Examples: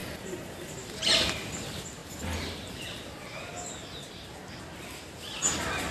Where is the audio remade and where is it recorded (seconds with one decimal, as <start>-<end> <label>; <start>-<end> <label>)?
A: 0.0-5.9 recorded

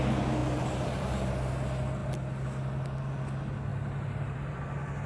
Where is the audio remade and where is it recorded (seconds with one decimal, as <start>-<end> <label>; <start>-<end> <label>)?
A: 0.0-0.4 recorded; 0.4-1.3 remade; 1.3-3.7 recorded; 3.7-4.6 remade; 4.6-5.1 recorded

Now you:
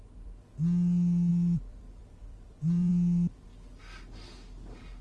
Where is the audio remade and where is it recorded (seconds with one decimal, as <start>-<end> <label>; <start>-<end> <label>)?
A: 0.0-1.3 recorded; 1.3-2.9 remade; 2.9-5.0 recorded